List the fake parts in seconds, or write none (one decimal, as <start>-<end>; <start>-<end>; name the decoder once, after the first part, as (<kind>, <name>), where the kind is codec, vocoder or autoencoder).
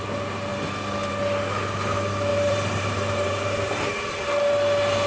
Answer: 2.3-3.9 (vocoder, BigVGAN v2)